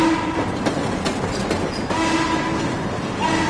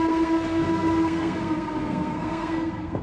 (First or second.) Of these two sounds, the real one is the first